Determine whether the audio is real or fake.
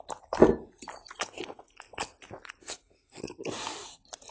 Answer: real